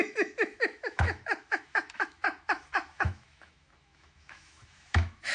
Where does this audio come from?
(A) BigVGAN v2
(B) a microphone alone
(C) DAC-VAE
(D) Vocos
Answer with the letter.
C